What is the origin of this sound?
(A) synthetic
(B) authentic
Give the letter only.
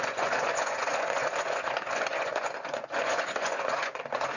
A